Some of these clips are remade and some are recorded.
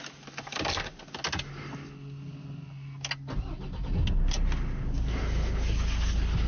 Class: recorded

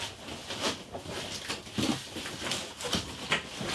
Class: recorded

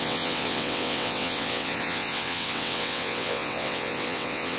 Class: remade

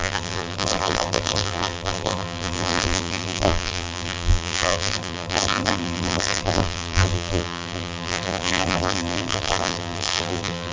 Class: remade